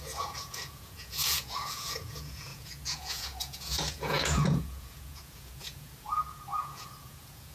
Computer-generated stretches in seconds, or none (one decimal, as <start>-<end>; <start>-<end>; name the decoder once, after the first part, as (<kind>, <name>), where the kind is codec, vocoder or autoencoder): 0.0-7.5 (vocoder, Vocos)